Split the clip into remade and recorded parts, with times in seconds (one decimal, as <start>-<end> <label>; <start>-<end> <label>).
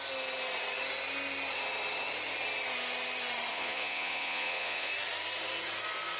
0.0-3.5 recorded; 3.5-4.9 remade; 4.9-6.2 recorded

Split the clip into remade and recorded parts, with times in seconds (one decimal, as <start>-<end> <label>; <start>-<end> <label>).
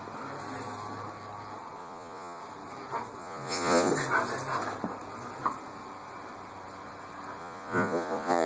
0.0-1.8 recorded; 1.8-2.4 remade; 2.4-3.2 recorded; 3.2-3.9 remade; 3.9-7.4 recorded; 7.4-8.5 remade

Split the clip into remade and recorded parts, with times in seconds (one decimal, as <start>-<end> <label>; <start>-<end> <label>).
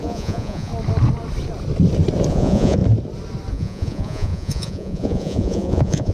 0.0-0.7 remade; 0.7-2.3 recorded; 2.3-2.8 remade; 2.8-3.5 recorded; 3.5-6.1 remade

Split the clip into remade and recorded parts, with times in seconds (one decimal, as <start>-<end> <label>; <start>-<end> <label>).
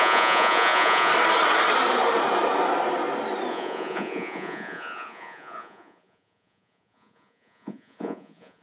0.0-1.1 remade; 1.1-3.5 recorded; 3.5-8.6 remade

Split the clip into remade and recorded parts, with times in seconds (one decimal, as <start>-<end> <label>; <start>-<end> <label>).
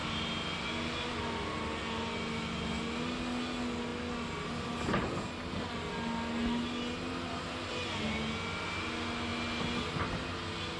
0.0-10.8 recorded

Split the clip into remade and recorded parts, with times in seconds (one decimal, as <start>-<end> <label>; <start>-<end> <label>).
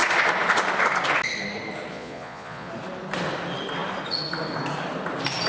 0.0-1.9 recorded; 1.9-2.7 remade; 2.7-5.5 recorded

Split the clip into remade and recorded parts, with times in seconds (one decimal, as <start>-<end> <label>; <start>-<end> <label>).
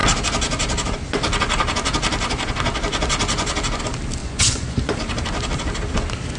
0.0-4.2 recorded; 4.2-4.8 remade; 4.8-6.4 recorded